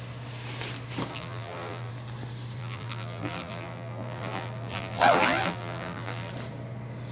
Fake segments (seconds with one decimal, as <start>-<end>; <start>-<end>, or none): 1.1-1.9; 2.6-6.3